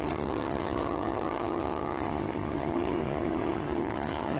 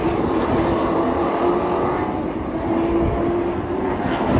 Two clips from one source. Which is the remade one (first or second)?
first